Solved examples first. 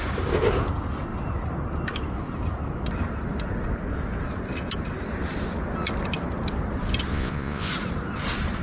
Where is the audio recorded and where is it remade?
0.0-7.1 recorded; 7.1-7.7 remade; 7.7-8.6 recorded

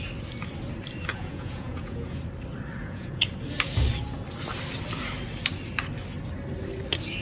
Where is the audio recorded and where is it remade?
0.0-1.1 recorded; 1.1-2.2 remade; 2.2-2.8 recorded; 2.8-3.3 remade; 3.3-7.2 recorded

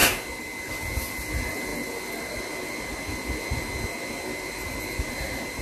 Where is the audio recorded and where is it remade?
0.0-5.6 recorded